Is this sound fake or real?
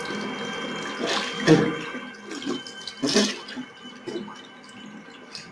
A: real